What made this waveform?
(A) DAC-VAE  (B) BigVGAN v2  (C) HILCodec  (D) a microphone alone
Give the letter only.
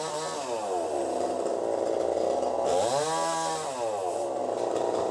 D